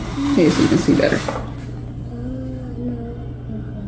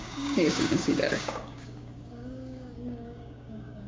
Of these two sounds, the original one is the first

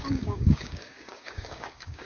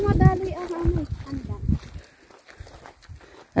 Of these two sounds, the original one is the second